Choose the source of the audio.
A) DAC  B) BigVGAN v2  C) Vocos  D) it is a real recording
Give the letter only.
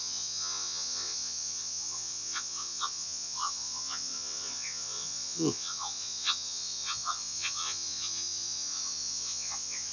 C